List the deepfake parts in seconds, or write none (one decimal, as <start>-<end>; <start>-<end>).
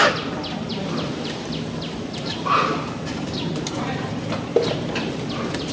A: 0.7-1.4; 2.6-5.0